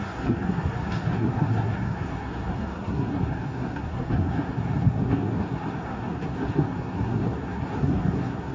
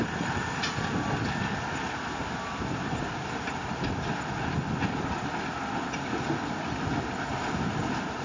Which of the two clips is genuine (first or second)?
second